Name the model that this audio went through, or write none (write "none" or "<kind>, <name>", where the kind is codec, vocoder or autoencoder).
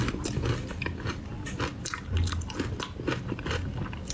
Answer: none